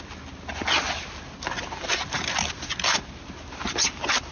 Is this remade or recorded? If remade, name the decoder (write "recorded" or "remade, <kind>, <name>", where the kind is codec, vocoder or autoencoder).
recorded